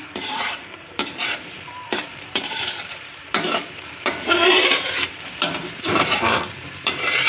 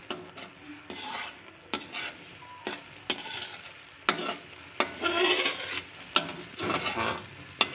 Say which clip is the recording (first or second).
second